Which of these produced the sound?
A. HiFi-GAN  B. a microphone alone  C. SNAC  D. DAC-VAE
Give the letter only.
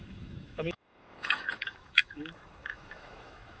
D